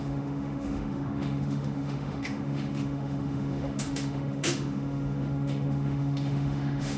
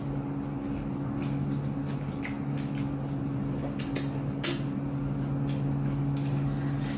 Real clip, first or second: second